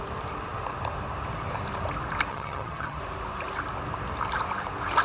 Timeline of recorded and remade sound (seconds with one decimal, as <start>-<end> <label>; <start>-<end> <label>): 0.0-2.3 recorded; 2.3-3.0 remade; 3.0-5.0 recorded